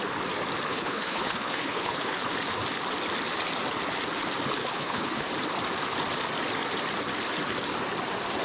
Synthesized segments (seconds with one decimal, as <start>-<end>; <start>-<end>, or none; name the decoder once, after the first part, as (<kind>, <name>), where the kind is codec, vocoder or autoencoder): 0.7-2.3 (codec, HILCodec); 4.6-5.3